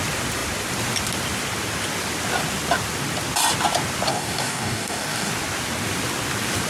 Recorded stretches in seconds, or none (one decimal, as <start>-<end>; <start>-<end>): 0.0-4.1; 5.3-6.7